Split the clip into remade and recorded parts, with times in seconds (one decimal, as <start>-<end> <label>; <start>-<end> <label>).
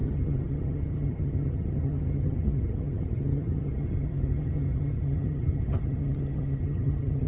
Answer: 0.0-7.3 remade